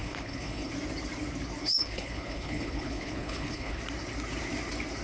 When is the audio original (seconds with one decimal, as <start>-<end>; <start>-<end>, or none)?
0.7-1.6; 3.8-5.0